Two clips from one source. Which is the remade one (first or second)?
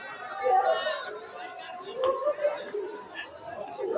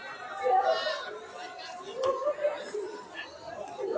second